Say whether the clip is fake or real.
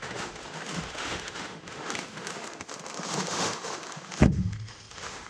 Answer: fake